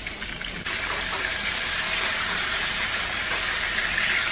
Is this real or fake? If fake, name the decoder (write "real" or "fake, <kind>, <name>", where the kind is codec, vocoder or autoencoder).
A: fake, vocoder, BigVGAN v2